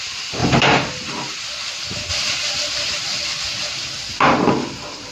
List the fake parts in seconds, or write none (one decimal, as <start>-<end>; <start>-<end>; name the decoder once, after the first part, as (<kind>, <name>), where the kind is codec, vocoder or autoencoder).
0.4-1.0 (vocoder, BigVGAN v2); 2.1-4.2